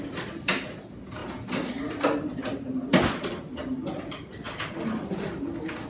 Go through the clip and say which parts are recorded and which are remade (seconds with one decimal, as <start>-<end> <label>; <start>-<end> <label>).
0.0-5.9 recorded

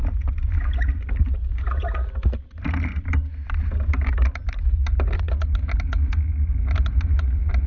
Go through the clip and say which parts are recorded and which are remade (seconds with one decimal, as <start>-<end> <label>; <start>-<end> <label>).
0.0-7.7 recorded

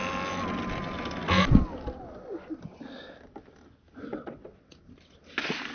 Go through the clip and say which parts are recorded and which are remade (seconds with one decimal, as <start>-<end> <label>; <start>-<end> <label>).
0.0-4.1 recorded; 4.1-4.7 remade; 4.7-5.7 recorded

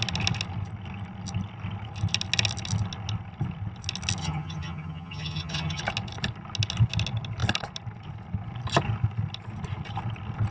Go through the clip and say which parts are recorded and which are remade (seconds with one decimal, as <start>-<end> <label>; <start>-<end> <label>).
0.0-4.2 recorded; 4.2-5.8 remade; 5.8-10.5 recorded

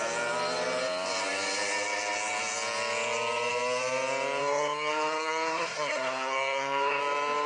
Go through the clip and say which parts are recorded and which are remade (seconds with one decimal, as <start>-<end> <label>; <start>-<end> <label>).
0.0-4.4 recorded; 4.4-7.0 remade; 7.0-7.5 recorded

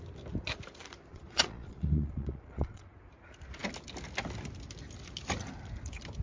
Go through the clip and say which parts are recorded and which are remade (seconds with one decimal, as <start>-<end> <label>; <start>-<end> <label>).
0.0-1.1 recorded; 1.1-3.1 remade; 3.1-6.2 recorded

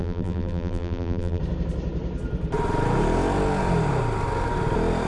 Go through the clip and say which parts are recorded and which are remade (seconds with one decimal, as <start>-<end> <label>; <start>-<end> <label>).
0.0-1.4 remade; 1.4-5.1 recorded

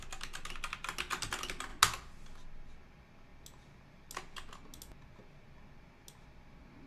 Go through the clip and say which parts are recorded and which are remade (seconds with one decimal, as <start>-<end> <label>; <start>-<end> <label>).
0.0-6.9 recorded